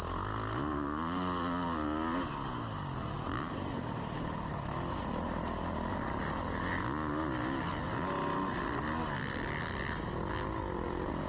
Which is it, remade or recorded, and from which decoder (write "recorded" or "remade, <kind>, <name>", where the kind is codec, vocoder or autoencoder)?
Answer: recorded